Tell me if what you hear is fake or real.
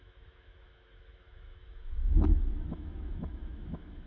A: fake